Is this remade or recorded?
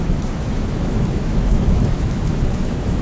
remade